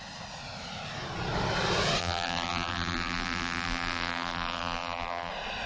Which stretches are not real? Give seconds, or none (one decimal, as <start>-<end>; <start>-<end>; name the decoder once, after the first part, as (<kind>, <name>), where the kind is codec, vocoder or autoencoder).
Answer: 2.0-5.3 (vocoder, BigVGAN v2)